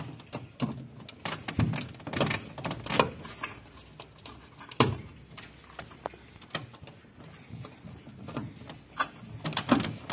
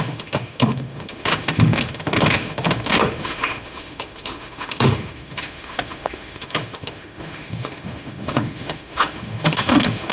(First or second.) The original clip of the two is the first